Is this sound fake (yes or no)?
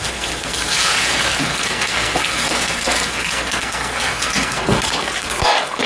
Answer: yes